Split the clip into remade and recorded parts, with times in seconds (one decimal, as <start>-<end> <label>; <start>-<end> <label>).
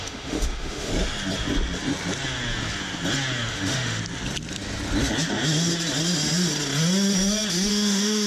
0.0-0.9 remade; 0.9-3.5 recorded; 3.5-4.0 remade; 4.0-7.7 recorded; 7.7-8.3 remade